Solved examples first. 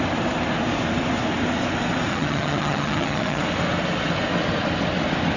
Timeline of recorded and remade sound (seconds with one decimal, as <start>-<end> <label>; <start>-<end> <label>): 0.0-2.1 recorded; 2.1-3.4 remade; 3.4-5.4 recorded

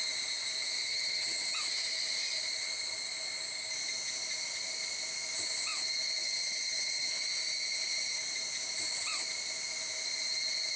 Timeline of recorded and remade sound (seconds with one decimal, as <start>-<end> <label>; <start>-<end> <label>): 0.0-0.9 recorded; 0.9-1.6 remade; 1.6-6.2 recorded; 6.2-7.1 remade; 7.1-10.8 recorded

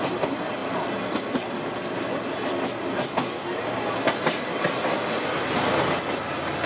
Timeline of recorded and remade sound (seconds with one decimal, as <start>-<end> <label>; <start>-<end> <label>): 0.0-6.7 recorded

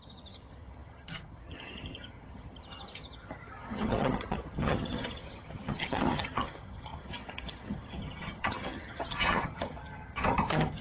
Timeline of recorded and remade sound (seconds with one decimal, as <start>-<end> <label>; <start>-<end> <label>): 0.0-10.8 remade

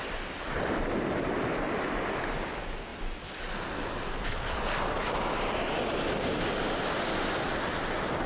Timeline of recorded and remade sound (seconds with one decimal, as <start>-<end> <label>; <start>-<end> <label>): 0.0-8.3 recorded

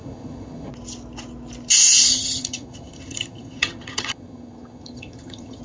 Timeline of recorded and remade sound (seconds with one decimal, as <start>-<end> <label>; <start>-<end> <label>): 0.0-0.7 remade; 0.7-2.1 recorded; 2.1-5.6 remade

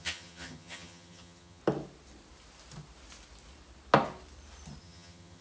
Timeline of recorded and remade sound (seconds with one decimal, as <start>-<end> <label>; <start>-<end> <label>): 0.0-1.6 remade; 1.6-4.8 recorded; 4.8-5.4 remade